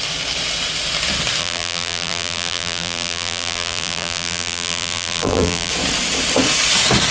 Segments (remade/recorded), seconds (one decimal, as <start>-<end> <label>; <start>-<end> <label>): 0.0-1.4 recorded; 1.4-5.7 remade; 5.7-7.1 recorded

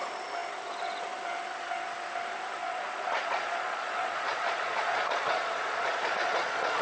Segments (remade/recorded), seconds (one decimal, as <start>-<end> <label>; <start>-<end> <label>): 0.0-2.6 recorded; 2.6-6.8 remade

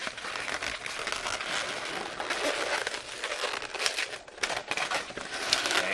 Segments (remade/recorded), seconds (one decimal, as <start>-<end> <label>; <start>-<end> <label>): 0.0-0.6 remade; 0.6-4.6 recorded; 4.6-5.5 remade; 5.5-5.9 recorded